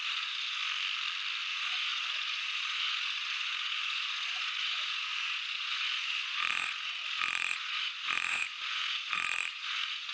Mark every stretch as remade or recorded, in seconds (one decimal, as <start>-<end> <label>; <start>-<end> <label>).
0.0-0.6 remade; 0.6-1.5 recorded; 1.5-10.1 remade